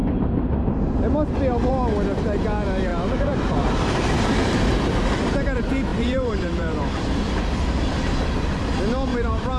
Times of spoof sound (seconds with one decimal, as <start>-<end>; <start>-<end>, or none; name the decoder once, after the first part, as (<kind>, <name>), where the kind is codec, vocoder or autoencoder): 2.9-4.8 (vocoder, BigVGAN v2); 5.9-7.4; 9.1-9.6